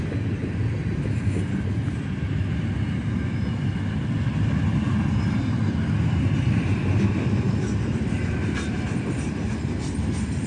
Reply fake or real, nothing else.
real